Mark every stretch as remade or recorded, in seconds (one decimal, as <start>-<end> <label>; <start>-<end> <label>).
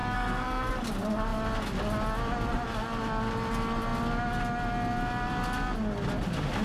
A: 0.0-0.7 remade; 0.7-6.6 recorded